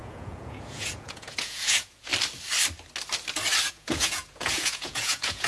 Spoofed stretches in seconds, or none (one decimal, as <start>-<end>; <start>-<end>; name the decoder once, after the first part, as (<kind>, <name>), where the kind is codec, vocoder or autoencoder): 0.0-2.1 (vocoder, Vocos); 3.7-5.5